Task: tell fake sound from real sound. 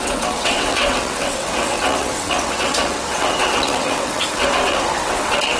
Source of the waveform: fake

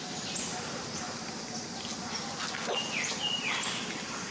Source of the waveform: real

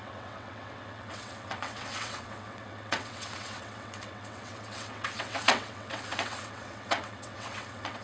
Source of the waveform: fake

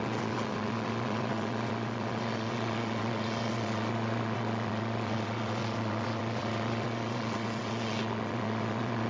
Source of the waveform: fake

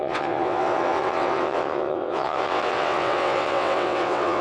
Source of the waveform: fake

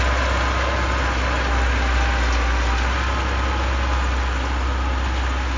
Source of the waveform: real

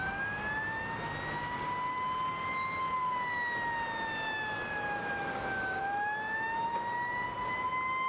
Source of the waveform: real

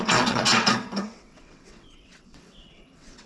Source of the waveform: fake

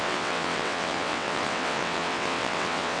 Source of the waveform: fake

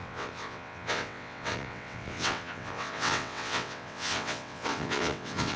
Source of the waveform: fake